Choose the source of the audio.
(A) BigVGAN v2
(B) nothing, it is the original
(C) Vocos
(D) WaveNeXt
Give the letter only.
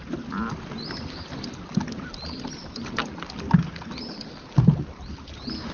B